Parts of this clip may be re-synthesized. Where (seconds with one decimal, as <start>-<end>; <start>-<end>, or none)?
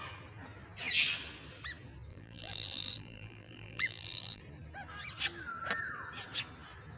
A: 2.1-4.4